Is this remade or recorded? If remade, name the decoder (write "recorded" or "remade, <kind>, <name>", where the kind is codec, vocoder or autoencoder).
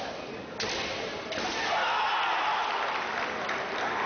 recorded